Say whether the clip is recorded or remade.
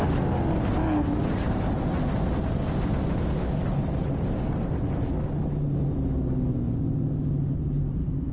recorded